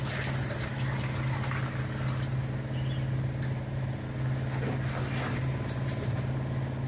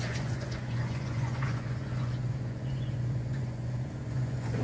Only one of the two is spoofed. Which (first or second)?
second